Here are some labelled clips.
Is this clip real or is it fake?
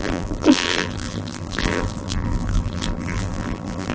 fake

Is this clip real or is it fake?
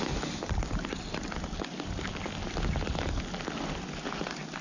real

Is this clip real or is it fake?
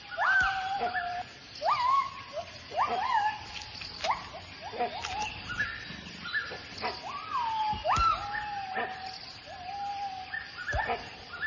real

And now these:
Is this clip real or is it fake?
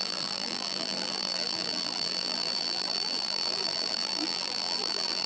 fake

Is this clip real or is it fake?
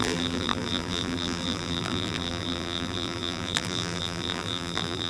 fake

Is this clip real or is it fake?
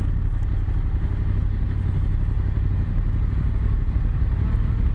real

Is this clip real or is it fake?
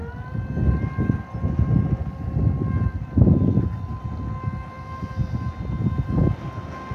real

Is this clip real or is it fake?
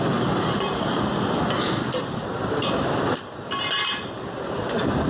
real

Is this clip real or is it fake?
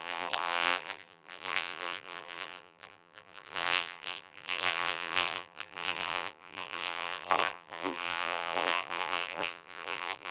fake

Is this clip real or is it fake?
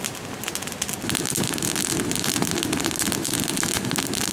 real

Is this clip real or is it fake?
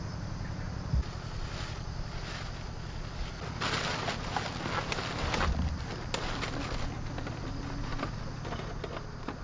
real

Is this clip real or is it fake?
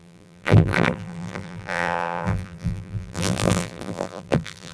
fake